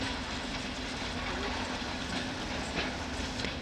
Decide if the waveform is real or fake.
real